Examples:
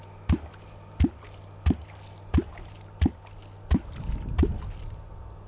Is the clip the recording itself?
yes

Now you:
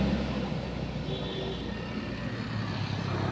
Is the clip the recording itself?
yes